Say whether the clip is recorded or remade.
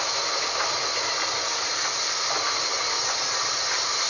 recorded